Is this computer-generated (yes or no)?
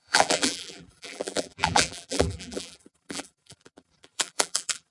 yes